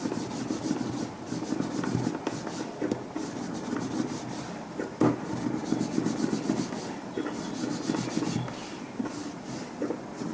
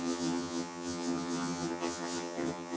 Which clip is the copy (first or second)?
second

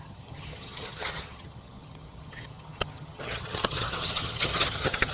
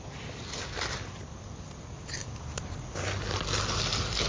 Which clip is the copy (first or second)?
first